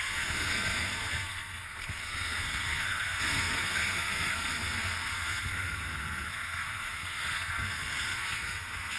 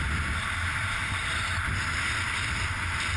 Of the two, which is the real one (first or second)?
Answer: second